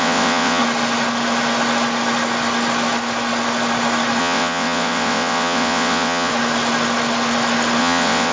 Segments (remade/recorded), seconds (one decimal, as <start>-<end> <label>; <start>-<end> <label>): 0.0-0.6 remade; 0.6-4.2 recorded; 4.2-6.3 remade; 6.3-7.8 recorded; 7.8-8.3 remade